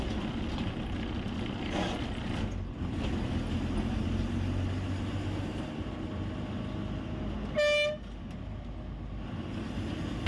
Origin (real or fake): real